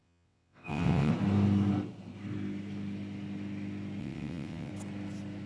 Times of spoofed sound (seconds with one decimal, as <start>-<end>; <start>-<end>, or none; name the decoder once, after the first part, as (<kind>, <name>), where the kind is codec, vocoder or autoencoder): 0.0-1.1 (vocoder, WaveNeXt); 4.0-4.7